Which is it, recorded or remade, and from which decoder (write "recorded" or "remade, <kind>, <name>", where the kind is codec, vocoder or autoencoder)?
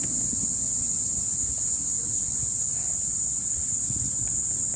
recorded